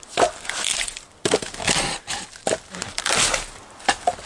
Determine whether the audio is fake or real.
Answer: real